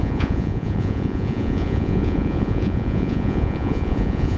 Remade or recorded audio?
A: remade